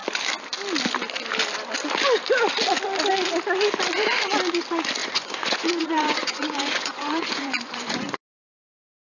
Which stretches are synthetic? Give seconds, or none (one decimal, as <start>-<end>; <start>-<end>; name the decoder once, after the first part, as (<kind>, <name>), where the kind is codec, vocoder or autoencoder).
5.0-8.2 (vocoder, Vocos)